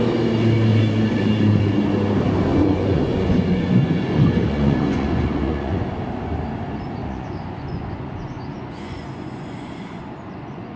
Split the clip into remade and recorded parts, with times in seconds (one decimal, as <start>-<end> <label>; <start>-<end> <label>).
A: 0.0-0.7 recorded; 0.7-1.8 remade; 1.8-2.5 recorded; 2.5-5.8 remade; 5.8-7.0 recorded; 7.0-10.8 remade